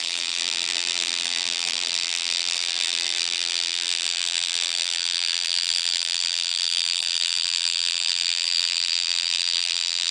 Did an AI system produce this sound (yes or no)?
yes